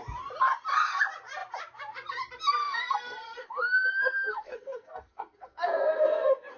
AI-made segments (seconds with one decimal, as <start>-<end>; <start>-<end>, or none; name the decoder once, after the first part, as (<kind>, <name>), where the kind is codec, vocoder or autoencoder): 2.6-6.6 (codec, SNAC)